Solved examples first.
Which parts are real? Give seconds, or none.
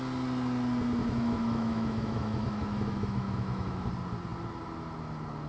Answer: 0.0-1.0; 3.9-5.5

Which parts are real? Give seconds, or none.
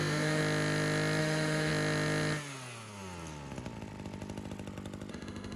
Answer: 0.4-1.2; 1.7-5.1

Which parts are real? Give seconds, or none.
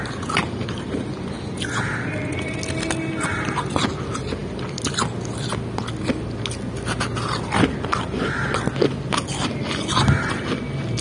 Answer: 0.0-11.0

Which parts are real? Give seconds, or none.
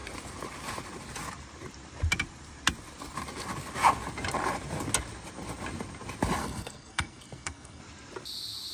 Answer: 0.0-6.4; 7.8-8.7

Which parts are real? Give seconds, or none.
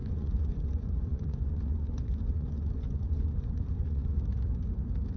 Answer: 0.7-1.1; 4.2-5.2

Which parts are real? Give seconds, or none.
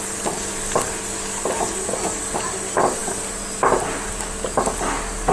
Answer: 0.0-5.3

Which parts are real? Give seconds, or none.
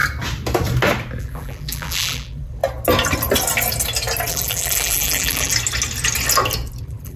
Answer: 0.0-1.2; 2.6-4.3; 5.5-6.8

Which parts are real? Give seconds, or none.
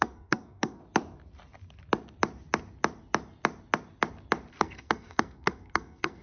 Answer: 0.8-4.5